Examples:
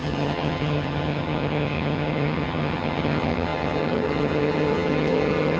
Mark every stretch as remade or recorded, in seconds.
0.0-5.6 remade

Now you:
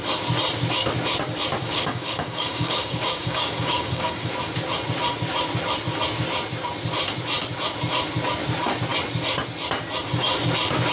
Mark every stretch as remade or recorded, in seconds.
0.0-1.6 recorded; 1.6-4.3 remade; 4.3-10.9 recorded

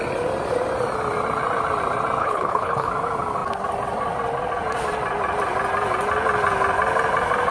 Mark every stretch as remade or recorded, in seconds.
0.0-2.2 recorded; 2.2-2.9 remade; 2.9-7.5 recorded

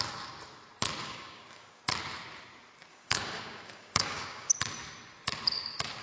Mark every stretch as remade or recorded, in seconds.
0.0-1.0 recorded; 1.0-1.8 remade; 1.8-2.9 recorded; 2.9-4.5 remade; 4.5-6.0 recorded

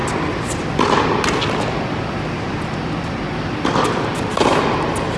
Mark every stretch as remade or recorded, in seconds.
0.0-5.2 recorded

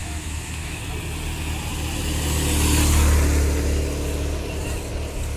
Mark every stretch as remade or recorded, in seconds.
0.0-0.8 remade; 0.8-5.4 recorded